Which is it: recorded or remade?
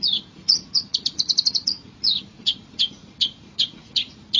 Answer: remade